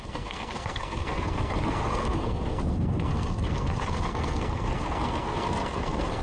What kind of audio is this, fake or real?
fake